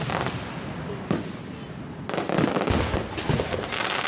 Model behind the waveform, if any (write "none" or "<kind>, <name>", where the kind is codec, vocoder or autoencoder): none